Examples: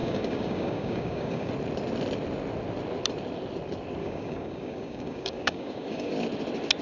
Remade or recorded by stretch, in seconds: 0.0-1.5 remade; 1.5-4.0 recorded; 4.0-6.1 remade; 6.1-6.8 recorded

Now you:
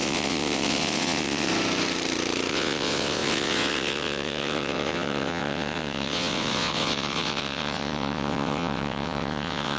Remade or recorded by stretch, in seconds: 0.0-1.5 remade; 1.5-2.5 recorded; 2.5-9.8 remade

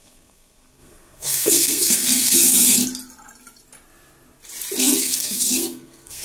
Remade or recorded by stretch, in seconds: 0.0-2.8 remade; 2.8-4.8 recorded; 4.8-6.2 remade